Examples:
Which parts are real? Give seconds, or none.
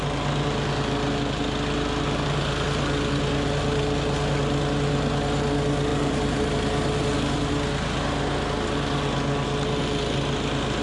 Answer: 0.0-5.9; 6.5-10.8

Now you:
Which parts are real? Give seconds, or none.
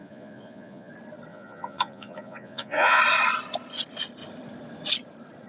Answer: 0.9-1.3; 3.0-5.5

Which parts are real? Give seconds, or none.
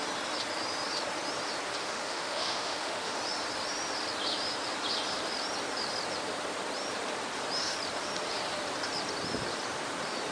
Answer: 0.0-1.8; 3.2-10.3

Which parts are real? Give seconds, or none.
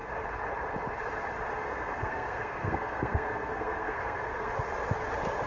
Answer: 0.0-1.6; 4.5-5.5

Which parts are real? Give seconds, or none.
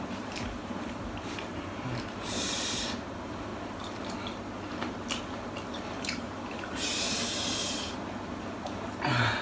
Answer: 3.5-4.7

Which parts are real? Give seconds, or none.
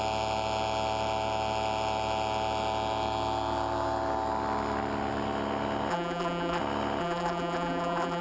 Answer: 0.0-5.9; 6.6-7.0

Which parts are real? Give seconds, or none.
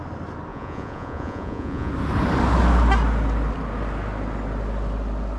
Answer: 0.0-0.5; 1.9-5.4